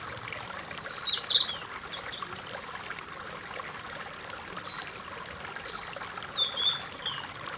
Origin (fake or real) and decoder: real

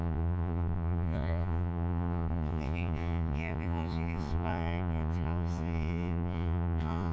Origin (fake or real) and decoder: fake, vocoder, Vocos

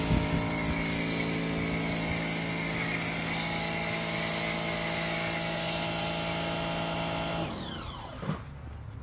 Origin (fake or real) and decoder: real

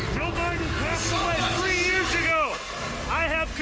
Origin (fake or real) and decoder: real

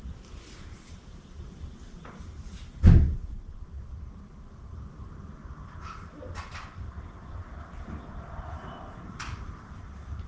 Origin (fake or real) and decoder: real